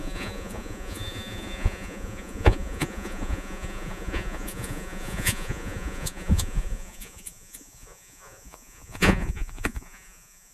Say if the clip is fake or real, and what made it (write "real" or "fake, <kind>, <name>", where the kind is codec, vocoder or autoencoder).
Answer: fake, vocoder, Vocos